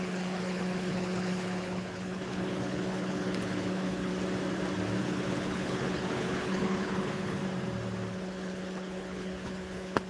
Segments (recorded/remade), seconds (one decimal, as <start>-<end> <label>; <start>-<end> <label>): 0.0-4.1 remade; 4.1-5.0 recorded; 5.0-7.4 remade; 7.4-8.1 recorded; 8.1-10.1 remade